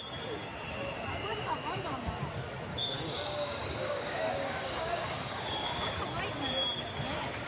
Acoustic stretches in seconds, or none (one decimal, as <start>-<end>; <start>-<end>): 0.0-1.3; 2.2-2.7; 5.9-7.5